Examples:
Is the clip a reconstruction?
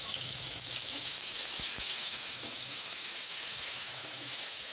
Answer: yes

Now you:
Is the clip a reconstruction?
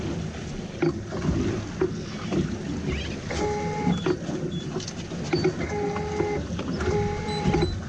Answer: no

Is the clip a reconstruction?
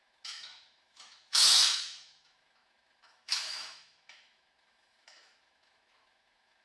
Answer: yes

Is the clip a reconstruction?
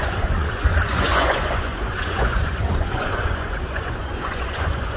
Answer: yes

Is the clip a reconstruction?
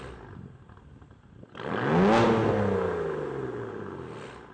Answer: no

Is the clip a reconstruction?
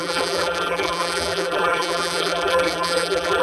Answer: yes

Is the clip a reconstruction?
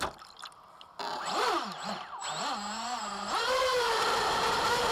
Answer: no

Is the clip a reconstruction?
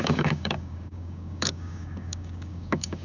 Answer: yes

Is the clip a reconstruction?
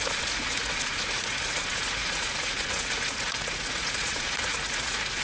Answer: yes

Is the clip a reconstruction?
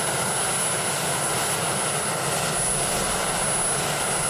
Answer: no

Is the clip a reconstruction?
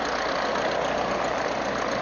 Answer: no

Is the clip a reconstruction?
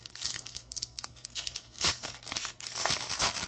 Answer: yes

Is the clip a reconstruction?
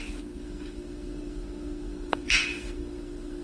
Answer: yes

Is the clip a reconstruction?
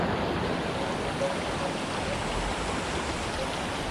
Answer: no